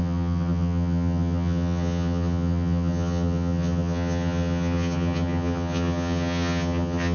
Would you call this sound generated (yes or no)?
yes